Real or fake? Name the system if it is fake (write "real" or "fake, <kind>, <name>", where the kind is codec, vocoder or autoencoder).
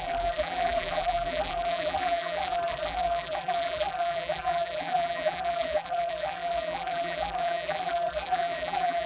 fake, vocoder, BigVGAN v2